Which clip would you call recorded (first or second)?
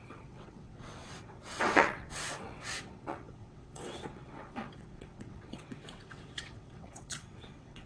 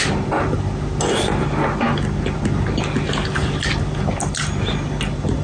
second